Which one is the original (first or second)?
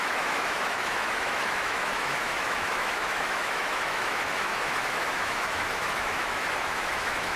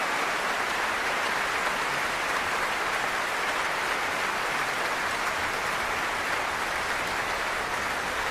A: second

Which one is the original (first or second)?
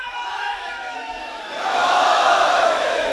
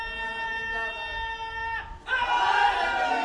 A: second